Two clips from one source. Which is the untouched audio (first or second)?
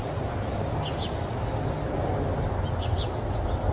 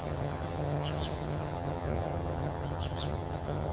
first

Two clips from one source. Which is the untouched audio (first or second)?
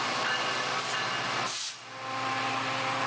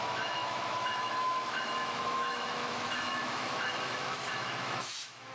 first